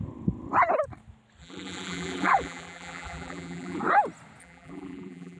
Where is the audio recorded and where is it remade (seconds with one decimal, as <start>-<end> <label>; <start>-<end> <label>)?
0.0-1.4 recorded; 1.4-3.8 remade; 3.8-4.4 recorded; 4.4-5.4 remade